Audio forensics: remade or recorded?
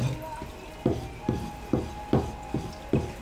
recorded